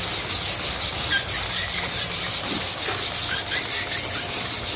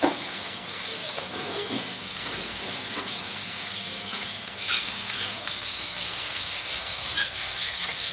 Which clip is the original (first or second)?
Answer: first